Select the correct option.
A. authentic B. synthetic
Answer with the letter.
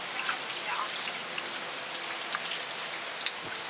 A